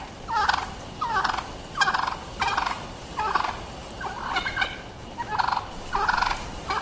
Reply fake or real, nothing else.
real